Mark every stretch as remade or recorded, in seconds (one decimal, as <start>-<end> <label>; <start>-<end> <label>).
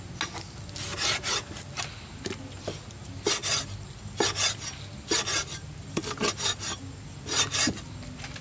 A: 0.0-8.4 recorded